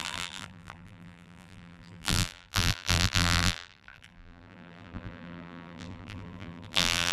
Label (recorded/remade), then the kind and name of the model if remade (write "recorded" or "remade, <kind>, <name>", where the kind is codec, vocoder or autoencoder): remade, vocoder, BigVGAN v2